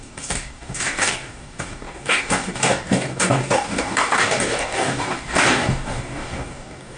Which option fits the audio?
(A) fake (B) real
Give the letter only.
A